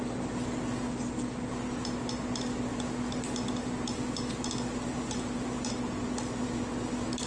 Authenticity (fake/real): real